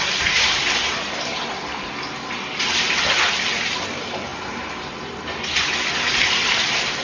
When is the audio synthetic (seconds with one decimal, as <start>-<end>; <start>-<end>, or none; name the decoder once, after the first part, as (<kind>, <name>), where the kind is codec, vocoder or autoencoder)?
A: none